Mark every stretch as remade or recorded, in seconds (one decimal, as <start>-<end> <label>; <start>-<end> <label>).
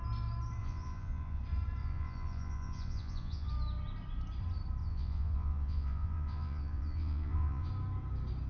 0.0-0.6 recorded; 0.6-1.4 remade; 1.4-1.8 recorded; 1.8-3.5 remade; 3.5-4.8 recorded; 4.8-7.7 remade; 7.7-8.5 recorded